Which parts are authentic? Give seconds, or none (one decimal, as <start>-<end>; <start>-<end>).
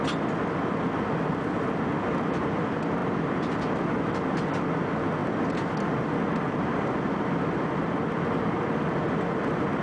0.0-9.8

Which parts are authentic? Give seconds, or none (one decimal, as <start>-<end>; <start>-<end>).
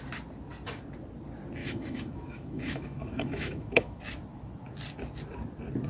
0.0-1.6; 4.0-5.9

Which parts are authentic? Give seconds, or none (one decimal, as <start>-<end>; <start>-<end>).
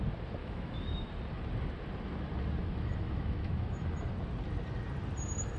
0.0-0.4; 1.1-2.6; 3.8-5.6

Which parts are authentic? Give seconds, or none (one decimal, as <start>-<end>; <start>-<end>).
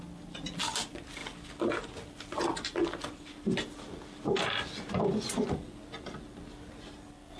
0.0-7.4